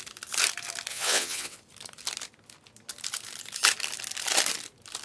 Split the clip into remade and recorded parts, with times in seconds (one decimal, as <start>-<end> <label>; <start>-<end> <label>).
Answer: 0.0-0.9 recorded; 0.9-1.6 remade; 1.6-5.0 recorded